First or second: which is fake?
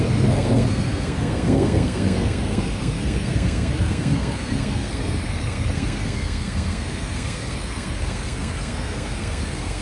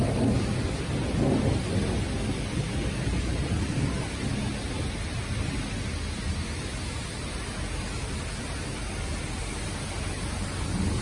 first